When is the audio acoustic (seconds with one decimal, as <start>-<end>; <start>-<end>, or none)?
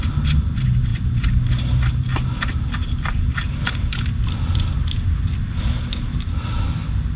0.0-7.2